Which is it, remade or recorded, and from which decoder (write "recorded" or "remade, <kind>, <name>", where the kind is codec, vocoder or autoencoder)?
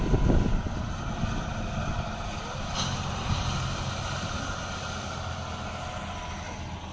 recorded